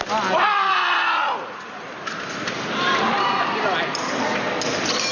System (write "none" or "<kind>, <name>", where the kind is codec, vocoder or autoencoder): none